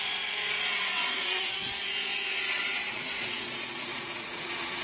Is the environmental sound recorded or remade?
remade